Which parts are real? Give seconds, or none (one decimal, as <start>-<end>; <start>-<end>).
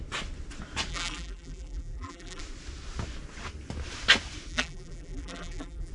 0.0-0.9; 2.4-4.5